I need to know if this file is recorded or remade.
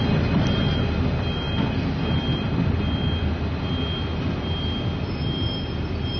recorded